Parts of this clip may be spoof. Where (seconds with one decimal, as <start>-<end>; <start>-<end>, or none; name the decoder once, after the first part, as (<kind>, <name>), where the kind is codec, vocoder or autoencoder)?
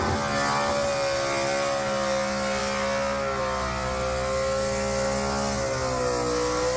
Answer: none